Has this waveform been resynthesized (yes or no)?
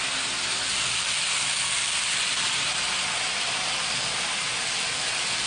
no